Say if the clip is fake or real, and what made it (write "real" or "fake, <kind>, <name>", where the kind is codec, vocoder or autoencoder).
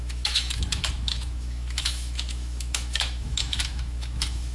fake, autoencoder, DAC-VAE